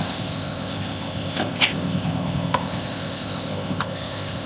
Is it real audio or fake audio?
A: fake